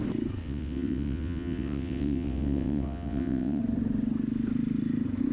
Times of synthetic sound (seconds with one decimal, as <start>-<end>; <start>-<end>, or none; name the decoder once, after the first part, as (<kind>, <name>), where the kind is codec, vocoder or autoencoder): 0.4-3.6 (vocoder, WaveNeXt)